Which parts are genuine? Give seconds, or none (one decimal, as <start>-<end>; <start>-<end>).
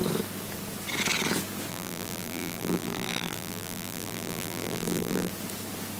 0.0-1.7; 5.3-6.0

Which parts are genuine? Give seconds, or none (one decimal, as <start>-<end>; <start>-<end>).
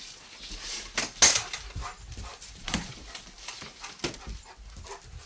0.0-2.3; 3.8-5.3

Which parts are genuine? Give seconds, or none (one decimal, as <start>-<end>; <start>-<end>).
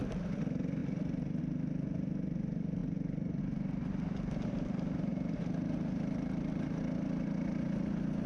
0.0-5.1; 6.8-8.3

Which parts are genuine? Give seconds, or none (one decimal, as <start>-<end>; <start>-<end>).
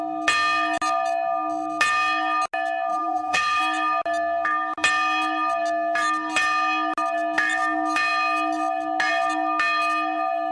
0.0-2.9; 3.6-10.5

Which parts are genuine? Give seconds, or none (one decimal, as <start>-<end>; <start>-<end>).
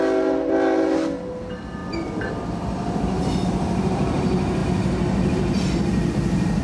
0.0-1.8; 3.5-6.6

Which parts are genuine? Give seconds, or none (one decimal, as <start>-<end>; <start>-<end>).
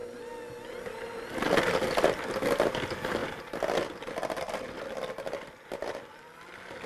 0.0-3.2; 6.4-6.9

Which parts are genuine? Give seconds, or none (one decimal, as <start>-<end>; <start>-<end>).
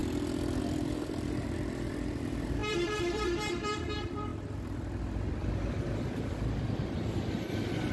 0.0-0.6; 4.3-6.0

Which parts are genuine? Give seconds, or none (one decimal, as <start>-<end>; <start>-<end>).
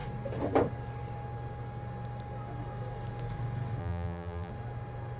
0.0-3.8; 4.5-5.2